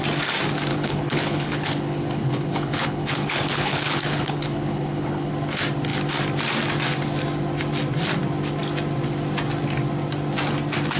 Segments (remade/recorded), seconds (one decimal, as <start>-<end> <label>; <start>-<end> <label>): 0.0-0.7 recorded; 0.7-5.3 remade; 5.3-11.0 recorded